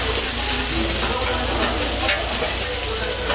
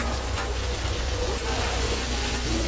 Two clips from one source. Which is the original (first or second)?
first